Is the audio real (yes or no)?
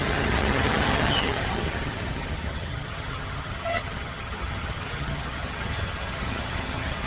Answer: no